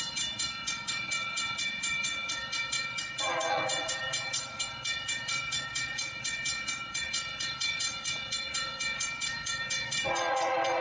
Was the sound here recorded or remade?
remade